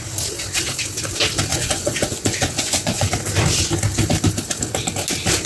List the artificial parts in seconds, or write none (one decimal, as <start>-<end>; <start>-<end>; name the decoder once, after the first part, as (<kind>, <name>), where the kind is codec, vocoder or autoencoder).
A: 1.5-3.1 (vocoder, Vocos)